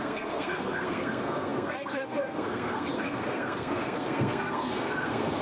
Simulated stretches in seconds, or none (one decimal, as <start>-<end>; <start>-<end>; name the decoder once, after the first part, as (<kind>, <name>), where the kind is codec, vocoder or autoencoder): 0.0-5.4 (codec, SNAC)